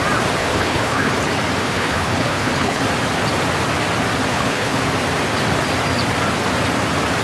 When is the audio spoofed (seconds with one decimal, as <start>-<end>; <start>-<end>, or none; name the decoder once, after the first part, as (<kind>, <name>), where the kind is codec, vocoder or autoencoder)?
0.4-1.1 (codec, HILCodec); 1.6-2.8; 4.3-4.8